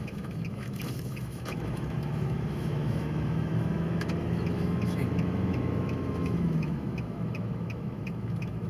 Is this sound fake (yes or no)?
yes